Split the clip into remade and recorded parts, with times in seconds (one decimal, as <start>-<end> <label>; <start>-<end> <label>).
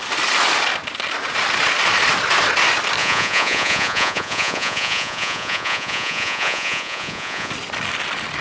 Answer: 0.0-3.0 recorded; 3.0-7.5 remade; 7.5-8.4 recorded